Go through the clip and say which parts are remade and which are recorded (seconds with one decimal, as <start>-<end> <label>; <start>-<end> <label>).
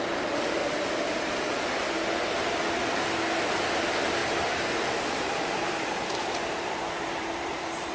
0.0-0.6 recorded; 0.6-1.6 remade; 1.6-4.2 recorded; 4.2-7.9 remade